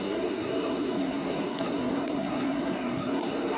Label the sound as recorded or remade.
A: remade